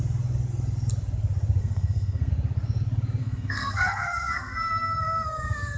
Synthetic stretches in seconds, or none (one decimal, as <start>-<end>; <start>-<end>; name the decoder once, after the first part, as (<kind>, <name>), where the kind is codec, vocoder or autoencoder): 1.6-2.3 (codec, SNAC); 3.2-5.8